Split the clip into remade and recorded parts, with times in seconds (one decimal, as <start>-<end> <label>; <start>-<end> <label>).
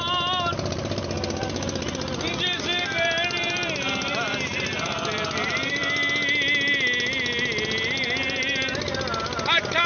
0.0-5.8 remade; 5.8-9.2 recorded; 9.2-9.9 remade